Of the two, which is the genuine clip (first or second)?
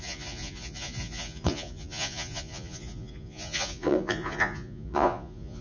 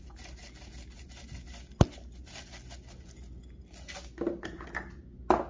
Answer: second